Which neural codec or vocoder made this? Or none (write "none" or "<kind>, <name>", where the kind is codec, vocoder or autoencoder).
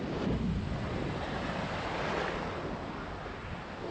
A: none